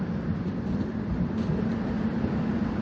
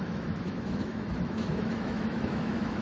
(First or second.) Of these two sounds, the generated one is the second